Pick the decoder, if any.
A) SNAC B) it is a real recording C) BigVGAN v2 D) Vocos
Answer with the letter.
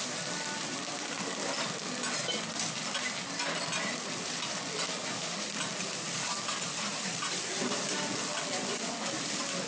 B